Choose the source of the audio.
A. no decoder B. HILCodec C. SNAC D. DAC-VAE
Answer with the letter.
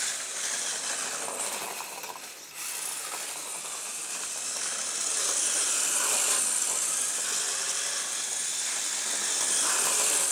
A